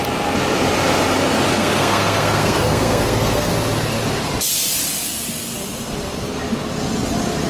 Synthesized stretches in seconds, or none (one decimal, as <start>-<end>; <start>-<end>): 1.6-3.5